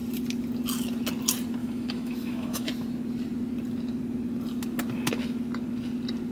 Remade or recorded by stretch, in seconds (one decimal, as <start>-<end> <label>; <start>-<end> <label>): 0.0-1.6 recorded; 1.6-2.7 remade; 2.7-6.3 recorded